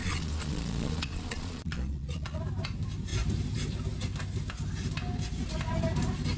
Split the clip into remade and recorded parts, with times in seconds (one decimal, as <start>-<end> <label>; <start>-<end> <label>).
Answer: 0.0-2.4 remade; 2.4-6.4 recorded